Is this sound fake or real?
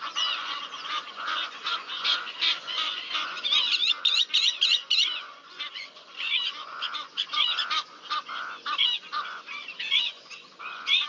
fake